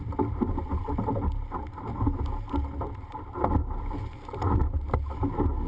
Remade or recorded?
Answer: recorded